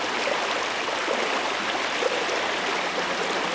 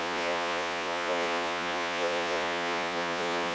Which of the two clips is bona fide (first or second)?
first